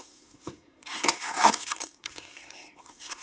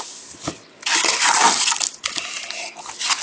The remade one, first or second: first